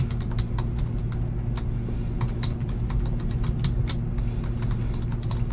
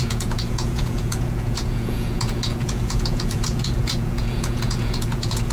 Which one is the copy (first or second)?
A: second